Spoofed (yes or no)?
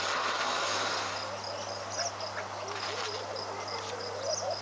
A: no